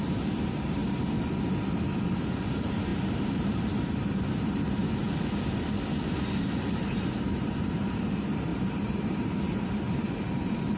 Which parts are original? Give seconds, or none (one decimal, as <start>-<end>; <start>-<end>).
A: 0.8-1.5; 4.8-6.0

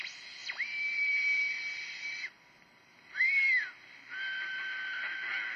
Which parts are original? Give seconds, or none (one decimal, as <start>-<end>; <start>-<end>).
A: 0.0-0.4; 3.4-5.6

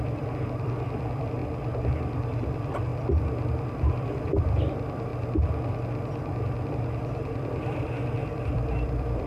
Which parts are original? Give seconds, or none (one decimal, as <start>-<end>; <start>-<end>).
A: 1.4-1.9; 2.9-3.9; 5.1-6.7

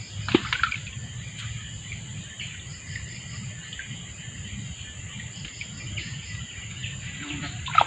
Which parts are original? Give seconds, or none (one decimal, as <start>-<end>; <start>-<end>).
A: 0.0-7.9

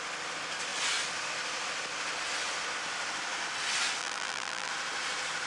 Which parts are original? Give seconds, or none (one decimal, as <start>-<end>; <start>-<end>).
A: 0.0-4.0; 4.7-5.5